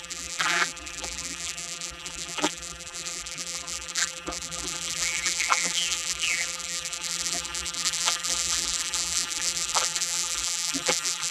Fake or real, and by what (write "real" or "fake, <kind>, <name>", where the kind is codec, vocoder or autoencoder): fake, vocoder, BigVGAN v2